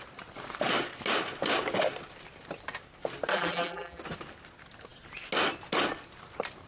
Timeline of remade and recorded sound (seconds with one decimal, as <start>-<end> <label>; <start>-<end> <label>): 0.0-3.3 recorded; 3.3-4.0 remade; 4.0-6.7 recorded